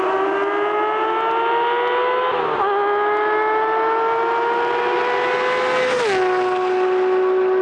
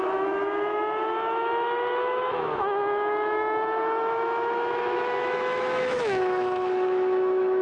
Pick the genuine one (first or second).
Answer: first